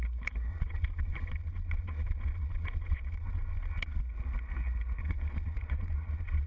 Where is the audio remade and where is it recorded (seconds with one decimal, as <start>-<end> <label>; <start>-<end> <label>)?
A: 0.0-0.5 recorded; 0.5-4.0 remade; 4.0-5.0 recorded; 5.0-6.5 remade